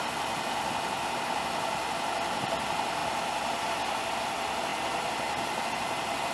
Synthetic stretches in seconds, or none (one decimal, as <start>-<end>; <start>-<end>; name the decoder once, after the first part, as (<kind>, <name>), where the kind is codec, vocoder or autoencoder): none